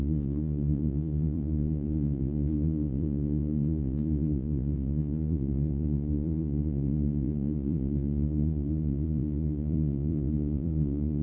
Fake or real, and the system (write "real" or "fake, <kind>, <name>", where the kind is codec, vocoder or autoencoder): fake, vocoder, Vocos